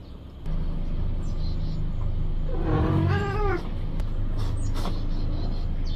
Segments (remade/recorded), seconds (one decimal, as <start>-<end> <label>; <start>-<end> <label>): 0.0-6.0 recorded